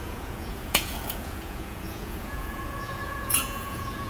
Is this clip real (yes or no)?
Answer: no